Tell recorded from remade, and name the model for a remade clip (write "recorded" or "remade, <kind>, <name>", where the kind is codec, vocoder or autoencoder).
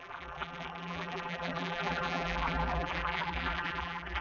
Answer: remade, vocoder, BigVGAN v2